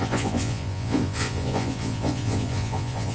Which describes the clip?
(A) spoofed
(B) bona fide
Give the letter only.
A